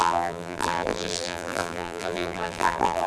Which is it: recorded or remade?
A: remade